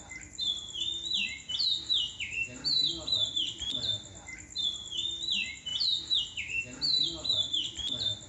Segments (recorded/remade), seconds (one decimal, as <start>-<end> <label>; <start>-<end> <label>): 0.0-8.3 recorded